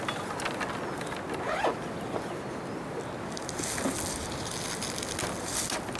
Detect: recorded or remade recorded